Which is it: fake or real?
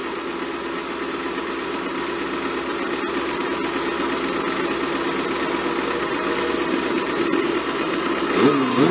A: real